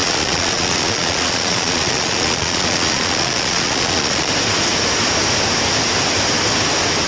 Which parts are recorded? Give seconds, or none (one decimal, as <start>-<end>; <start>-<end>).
4.3-7.1